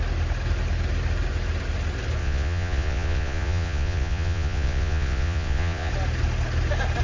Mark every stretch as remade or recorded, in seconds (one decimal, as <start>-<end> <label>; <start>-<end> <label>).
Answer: 0.0-2.2 recorded; 2.2-5.9 remade; 5.9-7.0 recorded